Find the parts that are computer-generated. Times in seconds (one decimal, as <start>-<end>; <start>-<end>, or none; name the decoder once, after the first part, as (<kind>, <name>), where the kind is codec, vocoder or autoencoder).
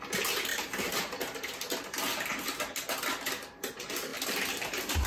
none